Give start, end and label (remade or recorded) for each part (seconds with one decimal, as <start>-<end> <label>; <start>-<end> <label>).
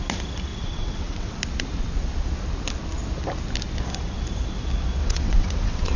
0.0-0.5 recorded; 0.5-1.4 remade; 1.4-5.0 recorded; 5.0-6.0 remade